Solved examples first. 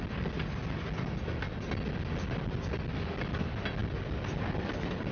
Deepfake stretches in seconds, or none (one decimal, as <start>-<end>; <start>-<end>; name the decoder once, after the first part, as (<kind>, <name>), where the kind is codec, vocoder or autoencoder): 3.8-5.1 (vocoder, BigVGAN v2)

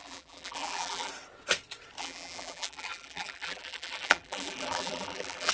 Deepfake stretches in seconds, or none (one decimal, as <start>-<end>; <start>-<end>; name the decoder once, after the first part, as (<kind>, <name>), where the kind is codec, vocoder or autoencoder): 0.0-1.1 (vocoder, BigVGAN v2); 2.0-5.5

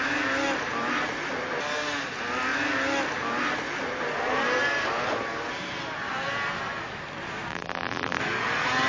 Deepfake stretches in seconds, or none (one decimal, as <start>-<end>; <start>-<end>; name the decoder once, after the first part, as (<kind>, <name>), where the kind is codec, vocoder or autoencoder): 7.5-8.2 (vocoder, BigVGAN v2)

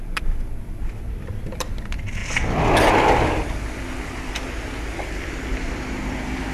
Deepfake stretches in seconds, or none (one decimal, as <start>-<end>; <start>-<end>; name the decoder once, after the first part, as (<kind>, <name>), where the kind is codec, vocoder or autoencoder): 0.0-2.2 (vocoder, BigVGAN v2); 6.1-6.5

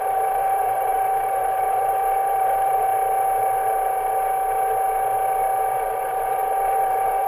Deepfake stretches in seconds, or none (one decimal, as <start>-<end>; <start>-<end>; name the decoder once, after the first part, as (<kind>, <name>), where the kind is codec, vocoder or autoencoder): 0.0-2.9 (vocoder, BigVGAN v2); 6.0-7.3